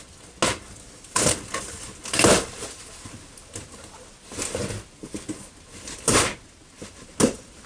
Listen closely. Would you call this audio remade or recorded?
recorded